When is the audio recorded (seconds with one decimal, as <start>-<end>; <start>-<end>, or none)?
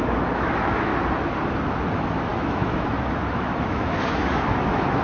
0.9-1.7